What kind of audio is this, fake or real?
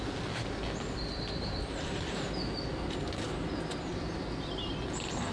real